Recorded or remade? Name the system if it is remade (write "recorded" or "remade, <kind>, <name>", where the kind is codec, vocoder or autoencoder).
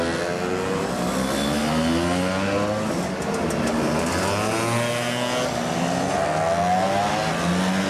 recorded